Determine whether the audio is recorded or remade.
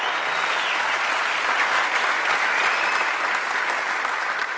recorded